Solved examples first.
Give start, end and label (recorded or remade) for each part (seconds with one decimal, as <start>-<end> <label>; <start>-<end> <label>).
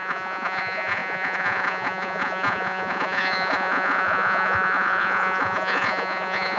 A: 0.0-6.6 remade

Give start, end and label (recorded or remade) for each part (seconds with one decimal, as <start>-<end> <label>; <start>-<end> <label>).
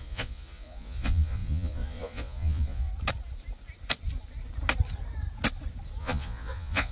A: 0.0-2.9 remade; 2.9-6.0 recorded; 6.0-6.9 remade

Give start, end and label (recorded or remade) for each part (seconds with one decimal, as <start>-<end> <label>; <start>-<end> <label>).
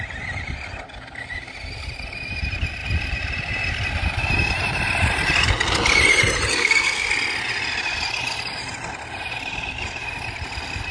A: 0.0-6.5 recorded; 6.5-7.1 remade; 7.1-10.9 recorded